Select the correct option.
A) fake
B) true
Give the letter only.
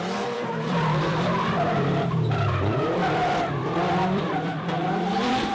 A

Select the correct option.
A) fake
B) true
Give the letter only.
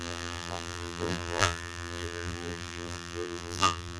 A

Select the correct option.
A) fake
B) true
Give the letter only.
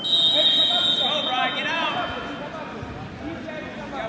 B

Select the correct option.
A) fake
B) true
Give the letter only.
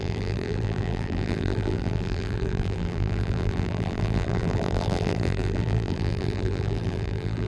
A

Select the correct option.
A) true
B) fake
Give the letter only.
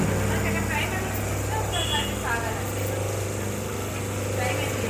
A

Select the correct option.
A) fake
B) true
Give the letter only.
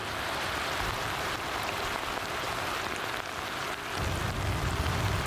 B